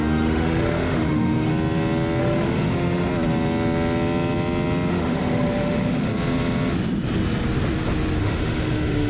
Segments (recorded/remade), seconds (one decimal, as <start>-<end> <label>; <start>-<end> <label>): 0.0-1.5 remade; 1.5-2.2 recorded; 2.2-3.1 remade; 3.1-4.9 recorded; 4.9-6.1 remade; 6.1-8.2 recorded; 8.2-9.1 remade